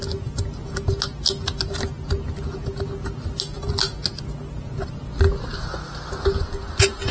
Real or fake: real